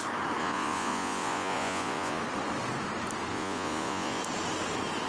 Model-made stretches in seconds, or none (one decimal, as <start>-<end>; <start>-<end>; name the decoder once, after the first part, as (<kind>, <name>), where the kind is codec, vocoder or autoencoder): 0.4-2.2 (vocoder, Vocos); 3.3-4.2